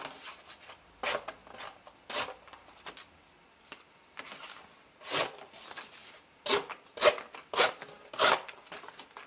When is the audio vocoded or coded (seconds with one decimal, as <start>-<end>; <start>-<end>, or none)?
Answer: none